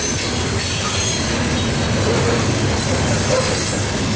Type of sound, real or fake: real